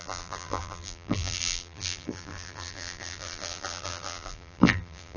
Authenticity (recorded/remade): remade